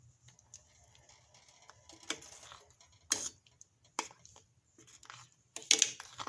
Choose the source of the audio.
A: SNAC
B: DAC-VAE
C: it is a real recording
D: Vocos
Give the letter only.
C